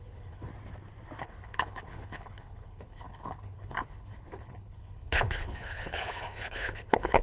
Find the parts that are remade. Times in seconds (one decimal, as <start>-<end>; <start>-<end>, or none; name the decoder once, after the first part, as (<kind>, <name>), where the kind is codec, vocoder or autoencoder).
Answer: 0.0-0.5 (codec, HILCodec); 1.2-7.2